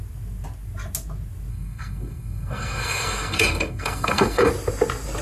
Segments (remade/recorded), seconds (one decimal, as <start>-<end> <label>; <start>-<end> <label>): 0.0-1.5 recorded; 1.5-4.5 remade; 4.5-5.2 recorded